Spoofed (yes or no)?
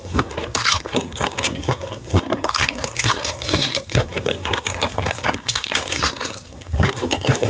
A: yes